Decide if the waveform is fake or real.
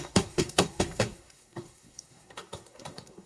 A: fake